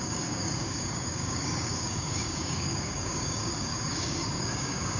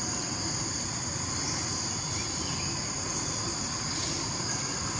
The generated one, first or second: first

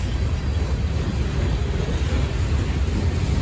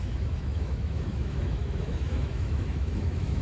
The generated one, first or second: second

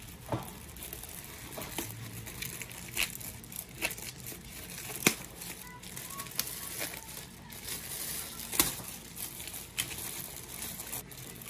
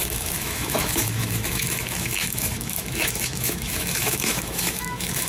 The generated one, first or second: second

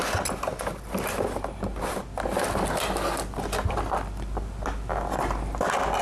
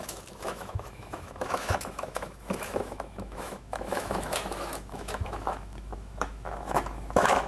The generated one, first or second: second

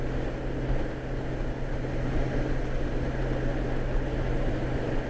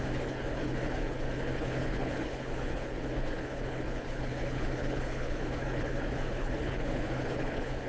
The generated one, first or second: second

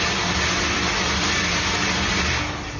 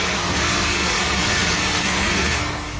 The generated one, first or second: second